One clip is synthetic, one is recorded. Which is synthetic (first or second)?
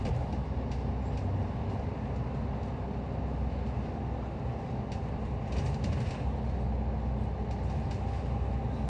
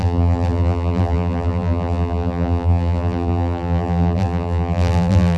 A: second